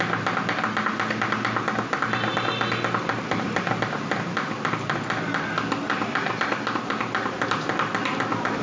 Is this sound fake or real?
real